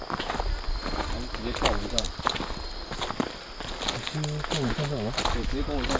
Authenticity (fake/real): real